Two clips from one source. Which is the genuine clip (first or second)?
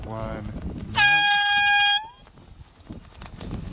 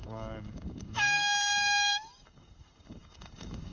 first